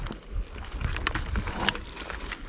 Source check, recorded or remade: recorded